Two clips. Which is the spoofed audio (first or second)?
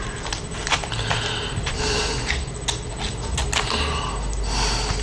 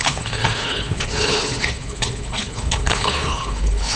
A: second